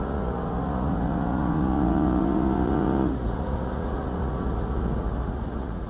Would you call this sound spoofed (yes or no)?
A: yes